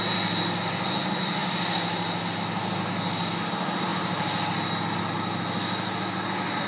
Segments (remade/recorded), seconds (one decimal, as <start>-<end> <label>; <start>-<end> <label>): 0.0-6.7 recorded

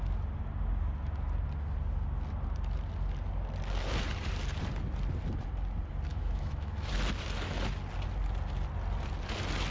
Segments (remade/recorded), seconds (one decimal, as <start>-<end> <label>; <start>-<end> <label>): 0.0-6.1 recorded; 6.1-6.9 remade; 6.9-9.7 recorded

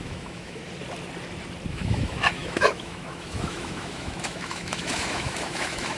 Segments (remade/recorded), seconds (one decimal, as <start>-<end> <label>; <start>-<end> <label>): 0.0-0.6 remade; 0.6-1.7 recorded; 1.7-6.0 remade

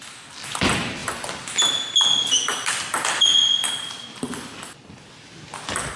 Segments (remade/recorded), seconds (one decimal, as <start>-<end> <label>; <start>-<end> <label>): 0.0-6.0 recorded

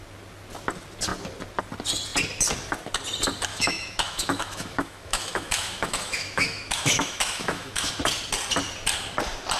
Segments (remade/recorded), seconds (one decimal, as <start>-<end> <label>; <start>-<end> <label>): 0.0-3.5 recorded; 3.5-7.9 remade; 7.9-9.6 recorded

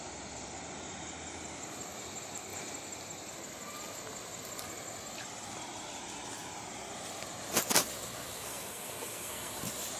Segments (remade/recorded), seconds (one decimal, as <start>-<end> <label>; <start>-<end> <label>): 0.0-8.3 recorded; 8.3-9.6 remade; 9.6-10.0 recorded

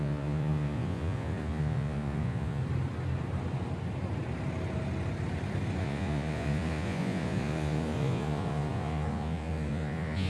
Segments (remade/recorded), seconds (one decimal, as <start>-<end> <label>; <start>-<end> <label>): 0.0-2.6 remade; 2.6-5.8 recorded; 5.8-10.3 remade